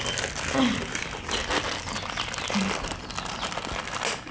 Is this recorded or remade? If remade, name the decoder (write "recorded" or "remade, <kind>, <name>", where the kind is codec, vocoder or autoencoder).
recorded